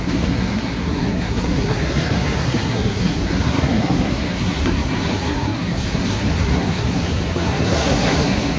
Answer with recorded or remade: remade